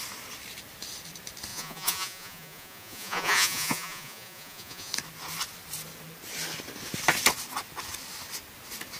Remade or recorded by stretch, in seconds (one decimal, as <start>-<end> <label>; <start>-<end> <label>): 0.0-1.5 recorded; 1.5-4.9 remade; 4.9-9.0 recorded